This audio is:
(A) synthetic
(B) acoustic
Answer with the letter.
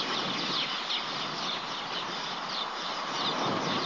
B